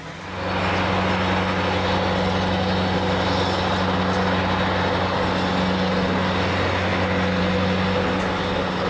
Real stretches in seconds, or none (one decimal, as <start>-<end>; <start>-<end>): 0.0-8.9